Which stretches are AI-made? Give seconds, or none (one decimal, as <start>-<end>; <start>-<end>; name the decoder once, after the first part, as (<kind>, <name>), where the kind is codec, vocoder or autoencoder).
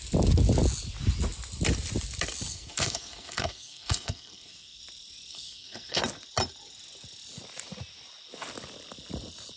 2.5-4.8 (codec, SNAC); 5.3-6.0